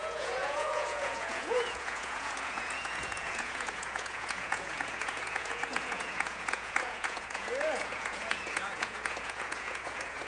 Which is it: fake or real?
fake